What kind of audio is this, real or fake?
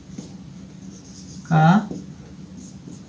real